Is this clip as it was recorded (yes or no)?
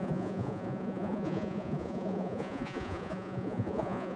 no